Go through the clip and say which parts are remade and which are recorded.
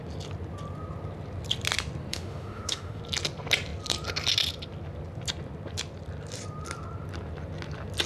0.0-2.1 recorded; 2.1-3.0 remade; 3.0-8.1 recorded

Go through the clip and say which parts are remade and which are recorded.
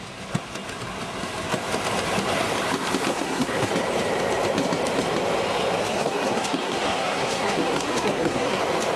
0.0-3.1 recorded; 3.1-3.7 remade; 3.7-5.8 recorded; 5.8-8.6 remade; 8.6-9.0 recorded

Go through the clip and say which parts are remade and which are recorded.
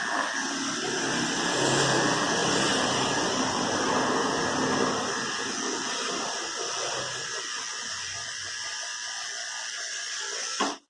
0.0-7.3 remade; 7.3-7.9 recorded; 7.9-8.9 remade; 8.9-9.9 recorded; 9.9-10.9 remade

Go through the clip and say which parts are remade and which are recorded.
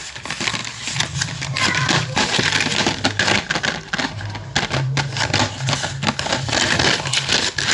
0.0-0.6 recorded; 0.6-2.4 remade; 2.4-2.8 recorded; 2.8-7.7 remade